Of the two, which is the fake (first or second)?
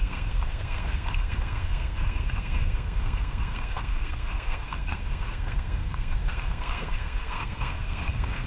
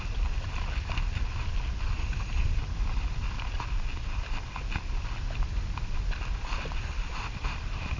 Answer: first